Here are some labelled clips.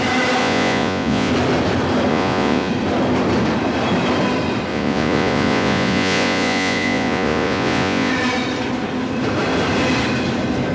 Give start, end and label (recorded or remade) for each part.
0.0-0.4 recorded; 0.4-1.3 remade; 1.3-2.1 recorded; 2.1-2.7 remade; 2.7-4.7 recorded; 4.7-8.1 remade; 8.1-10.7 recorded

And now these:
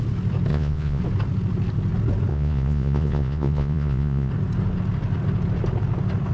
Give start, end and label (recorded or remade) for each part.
0.0-0.5 recorded; 0.5-1.0 remade; 1.0-2.3 recorded; 2.3-4.3 remade; 4.3-6.3 recorded

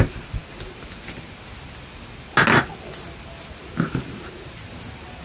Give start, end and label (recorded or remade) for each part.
0.0-5.2 recorded

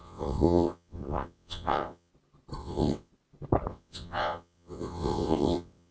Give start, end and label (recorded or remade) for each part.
0.0-2.1 remade; 2.1-2.6 recorded; 2.6-3.1 remade; 3.1-3.7 recorded; 3.7-5.9 remade

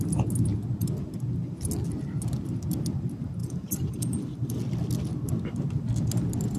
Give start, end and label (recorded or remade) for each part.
0.0-3.4 recorded; 3.4-4.6 remade; 4.6-6.6 recorded

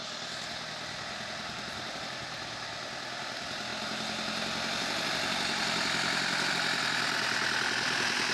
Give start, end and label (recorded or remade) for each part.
0.0-8.3 recorded

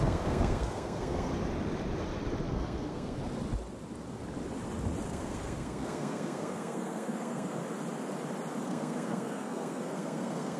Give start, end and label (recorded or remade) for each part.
0.0-1.3 remade; 1.3-2.5 recorded; 2.5-3.2 remade; 3.2-5.1 recorded; 5.1-7.6 remade; 7.6-8.6 recorded; 8.6-10.6 remade

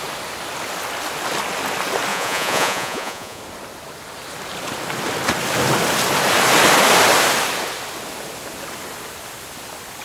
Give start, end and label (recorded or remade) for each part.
0.0-2.1 recorded; 2.1-3.4 remade; 3.4-10.0 recorded